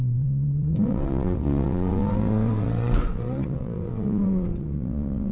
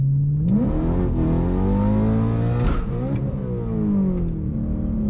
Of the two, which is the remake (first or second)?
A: first